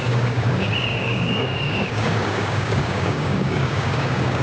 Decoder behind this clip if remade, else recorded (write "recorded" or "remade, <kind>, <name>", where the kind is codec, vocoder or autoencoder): remade, codec, DAC